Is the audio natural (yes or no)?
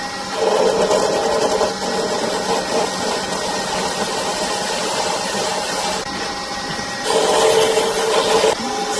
yes